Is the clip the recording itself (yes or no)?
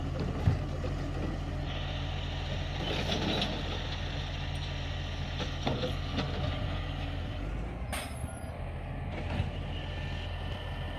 yes